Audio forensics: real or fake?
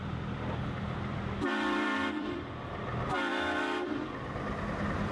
fake